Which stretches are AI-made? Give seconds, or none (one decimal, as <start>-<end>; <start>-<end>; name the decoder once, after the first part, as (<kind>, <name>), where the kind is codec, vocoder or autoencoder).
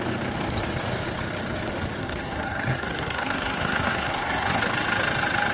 2.0-4.6 (codec, SNAC)